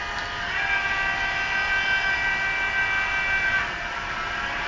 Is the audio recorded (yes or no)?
yes